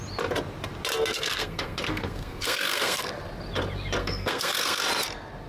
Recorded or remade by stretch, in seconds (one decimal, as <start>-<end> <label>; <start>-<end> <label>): 0.0-1.1 recorded; 1.1-3.1 remade; 3.1-4.0 recorded; 4.0-4.8 remade; 4.8-5.5 recorded